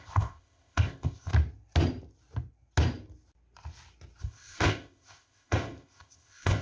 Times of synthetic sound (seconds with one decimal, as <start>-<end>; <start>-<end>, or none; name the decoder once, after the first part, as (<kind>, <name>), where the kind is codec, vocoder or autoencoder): 0.0-1.3 (codec, ZipCodec); 4.2-6.6